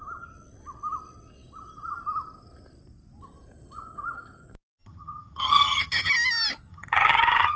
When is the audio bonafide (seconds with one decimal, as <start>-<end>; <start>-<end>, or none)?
0.0-4.8; 6.1-6.7